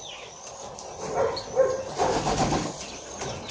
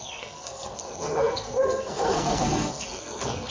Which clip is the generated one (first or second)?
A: second